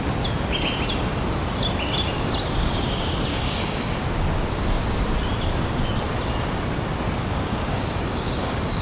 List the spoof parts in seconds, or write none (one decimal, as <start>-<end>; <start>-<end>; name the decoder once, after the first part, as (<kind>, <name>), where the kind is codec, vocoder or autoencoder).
3.3-4.0 (codec, DAC); 7.3-8.8